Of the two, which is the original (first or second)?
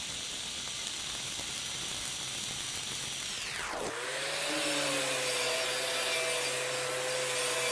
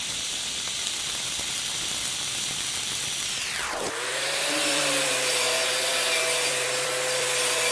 first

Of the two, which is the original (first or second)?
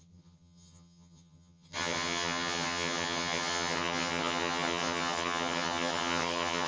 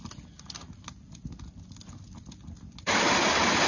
second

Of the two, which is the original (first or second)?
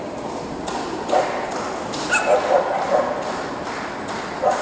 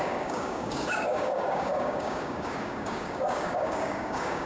first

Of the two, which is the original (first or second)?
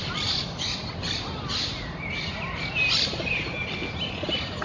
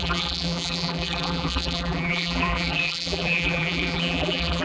first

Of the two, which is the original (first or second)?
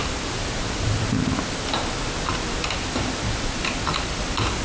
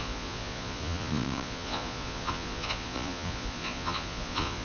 first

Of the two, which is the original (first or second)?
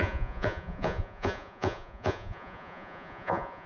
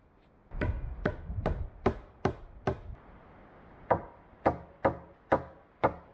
second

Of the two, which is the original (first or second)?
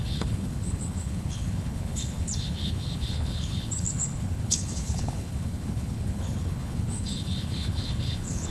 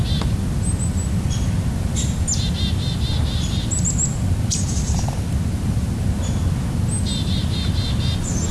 second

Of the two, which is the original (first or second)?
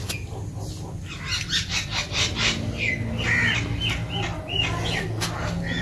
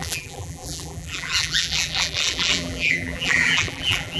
first